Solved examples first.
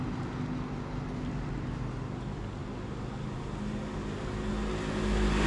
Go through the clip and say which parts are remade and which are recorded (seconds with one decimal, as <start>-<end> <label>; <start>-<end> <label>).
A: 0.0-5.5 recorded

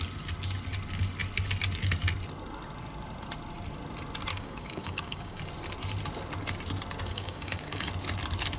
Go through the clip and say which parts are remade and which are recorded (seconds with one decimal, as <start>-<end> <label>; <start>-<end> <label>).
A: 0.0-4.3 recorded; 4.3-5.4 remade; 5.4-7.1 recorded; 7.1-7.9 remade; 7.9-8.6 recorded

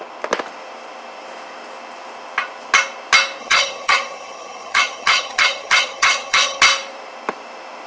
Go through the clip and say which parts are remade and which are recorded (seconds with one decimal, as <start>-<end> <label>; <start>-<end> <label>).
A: 0.0-3.4 recorded; 3.4-6.6 remade; 6.6-7.9 recorded

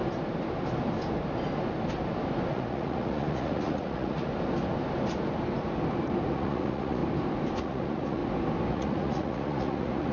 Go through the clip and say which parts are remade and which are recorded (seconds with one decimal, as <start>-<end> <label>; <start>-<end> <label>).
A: 0.0-2.5 recorded; 2.5-4.3 remade; 4.3-6.3 recorded; 6.3-7.0 remade; 7.0-7.6 recorded; 7.6-8.2 remade; 8.2-8.7 recorded; 8.7-10.1 remade

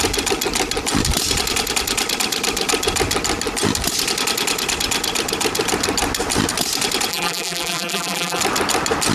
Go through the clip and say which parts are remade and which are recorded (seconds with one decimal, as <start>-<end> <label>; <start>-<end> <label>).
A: 0.0-7.1 recorded; 7.1-8.4 remade; 8.4-9.1 recorded

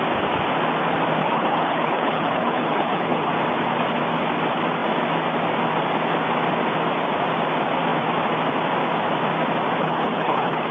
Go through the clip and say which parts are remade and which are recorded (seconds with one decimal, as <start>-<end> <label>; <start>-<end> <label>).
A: 0.0-1.2 recorded; 1.2-3.3 remade; 3.3-9.8 recorded; 9.8-10.7 remade

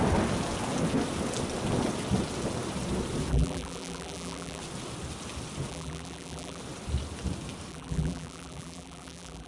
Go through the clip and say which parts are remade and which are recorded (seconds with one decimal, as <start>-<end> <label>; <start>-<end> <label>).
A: 0.0-3.3 recorded; 3.3-4.6 remade; 4.6-5.7 recorded; 5.7-6.6 remade; 6.6-7.7 recorded; 7.7-9.5 remade